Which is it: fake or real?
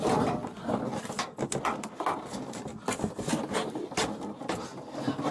real